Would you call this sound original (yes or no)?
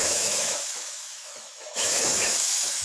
no